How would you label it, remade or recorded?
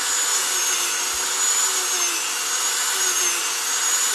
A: recorded